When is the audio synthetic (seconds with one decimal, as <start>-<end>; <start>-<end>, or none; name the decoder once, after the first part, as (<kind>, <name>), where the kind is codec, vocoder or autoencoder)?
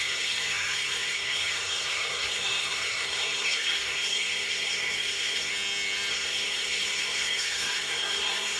0.0-5.5 (codec, SNAC); 6.1-8.6